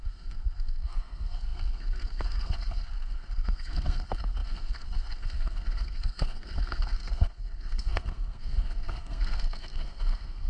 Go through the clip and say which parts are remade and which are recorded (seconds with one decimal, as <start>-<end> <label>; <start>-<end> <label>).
0.0-10.5 remade